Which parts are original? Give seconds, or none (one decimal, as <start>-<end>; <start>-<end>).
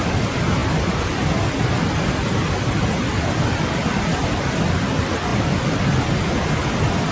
0.0-7.1